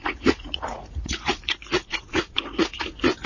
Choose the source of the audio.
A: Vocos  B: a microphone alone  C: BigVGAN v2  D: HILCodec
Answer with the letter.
A